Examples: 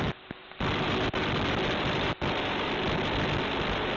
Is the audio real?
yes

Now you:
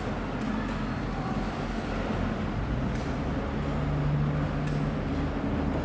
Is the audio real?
yes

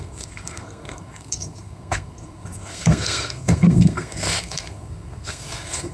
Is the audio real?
no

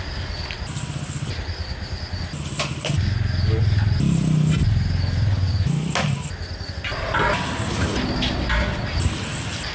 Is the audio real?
yes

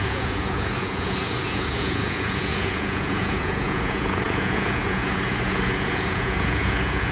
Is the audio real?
no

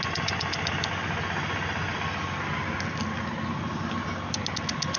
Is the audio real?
yes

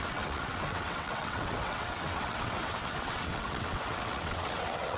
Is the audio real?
no